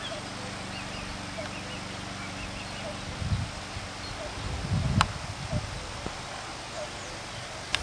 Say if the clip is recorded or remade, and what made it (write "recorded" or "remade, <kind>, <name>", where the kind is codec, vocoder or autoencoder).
recorded